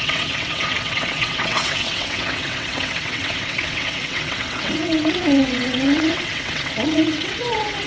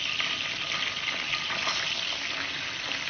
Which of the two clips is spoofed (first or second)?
first